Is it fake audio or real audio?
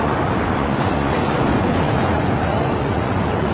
fake